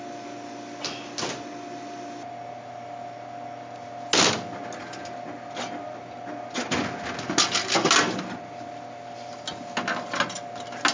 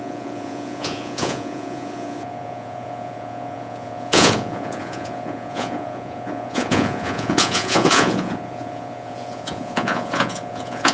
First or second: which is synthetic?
second